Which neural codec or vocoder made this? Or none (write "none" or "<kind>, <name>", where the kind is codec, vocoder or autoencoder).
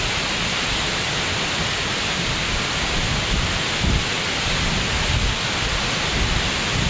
none